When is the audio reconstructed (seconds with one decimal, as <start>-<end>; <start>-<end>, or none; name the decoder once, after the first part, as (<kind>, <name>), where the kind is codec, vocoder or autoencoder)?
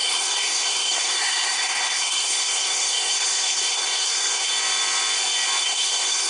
0.0-4.5 (codec, SNAC); 5.6-6.3